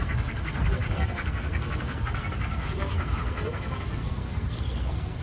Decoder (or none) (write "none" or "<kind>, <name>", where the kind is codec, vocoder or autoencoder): codec, SNAC